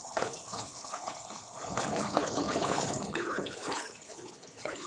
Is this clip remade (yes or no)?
yes